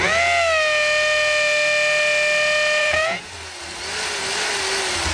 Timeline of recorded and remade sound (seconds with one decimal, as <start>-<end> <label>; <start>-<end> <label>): 0.0-2.8 recorded; 2.8-3.3 remade; 3.3-5.1 recorded